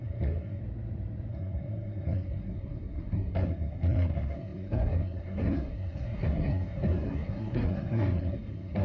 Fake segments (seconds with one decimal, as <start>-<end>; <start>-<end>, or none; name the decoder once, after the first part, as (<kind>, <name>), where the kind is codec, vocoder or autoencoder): 0.0-0.6 (codec, SNAC); 1.3-8.8